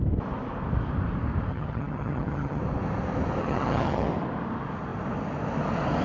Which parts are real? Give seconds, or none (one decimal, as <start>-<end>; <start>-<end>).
0.0-1.5; 2.6-3.4; 4.1-6.0